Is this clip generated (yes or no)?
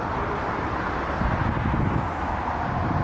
no